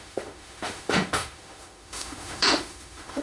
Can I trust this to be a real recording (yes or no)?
no